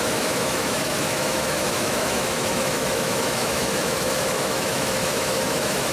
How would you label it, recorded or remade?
remade